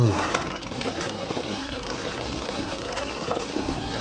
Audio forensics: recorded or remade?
remade